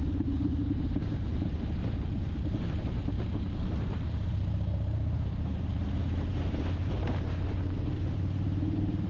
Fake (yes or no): yes